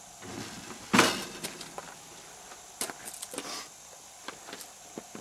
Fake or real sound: real